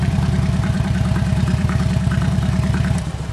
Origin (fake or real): fake